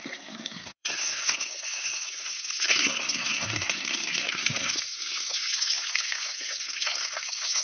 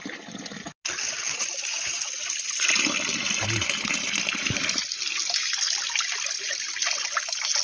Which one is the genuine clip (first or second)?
second